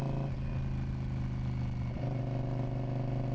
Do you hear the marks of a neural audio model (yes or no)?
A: no